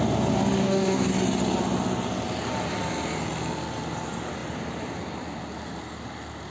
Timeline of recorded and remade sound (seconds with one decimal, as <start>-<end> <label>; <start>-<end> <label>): 0.0-0.6 recorded; 0.6-1.1 remade; 1.1-6.5 recorded